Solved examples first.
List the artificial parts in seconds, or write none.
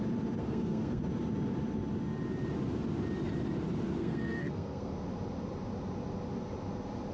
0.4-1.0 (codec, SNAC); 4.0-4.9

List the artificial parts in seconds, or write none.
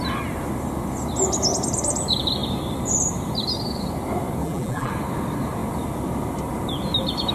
4.4-4.9 (vocoder, BigVGAN v2)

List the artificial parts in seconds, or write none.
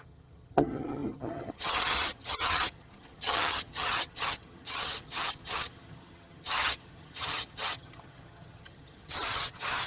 0.0-9.9 (vocoder, HiFi-GAN)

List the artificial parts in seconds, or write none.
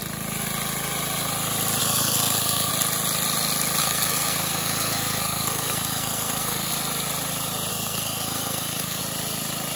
1.8-2.7 (codec, SNAC); 3.8-6.7; 7.7-9.0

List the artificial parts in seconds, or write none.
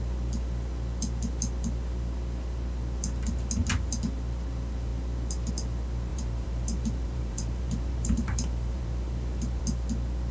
6.1-9.6 (vocoder, BigVGAN v2)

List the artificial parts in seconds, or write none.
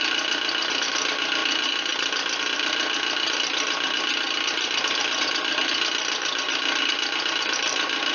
none